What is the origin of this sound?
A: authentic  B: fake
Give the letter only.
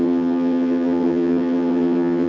B